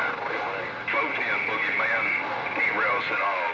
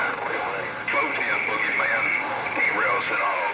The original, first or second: first